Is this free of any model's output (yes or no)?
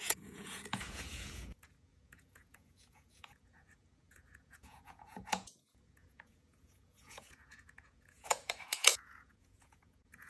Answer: no